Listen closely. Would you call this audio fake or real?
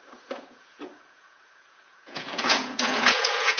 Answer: fake